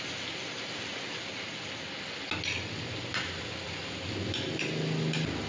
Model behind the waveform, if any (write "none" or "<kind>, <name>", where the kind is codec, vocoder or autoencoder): none